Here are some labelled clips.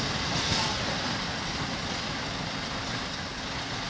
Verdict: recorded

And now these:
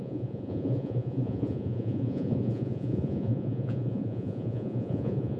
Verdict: remade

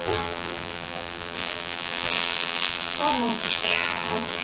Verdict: remade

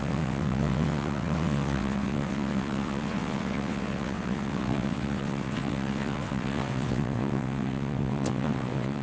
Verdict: remade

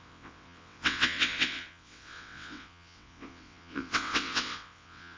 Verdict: remade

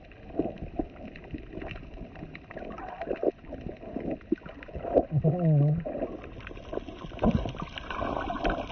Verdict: recorded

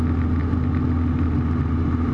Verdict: recorded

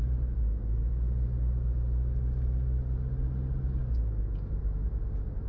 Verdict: recorded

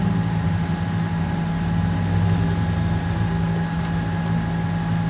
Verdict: recorded